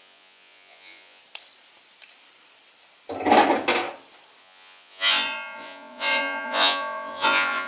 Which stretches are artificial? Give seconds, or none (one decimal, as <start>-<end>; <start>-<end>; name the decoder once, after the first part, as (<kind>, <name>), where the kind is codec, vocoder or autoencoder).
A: 0.0-1.2 (vocoder, Vocos); 4.4-7.7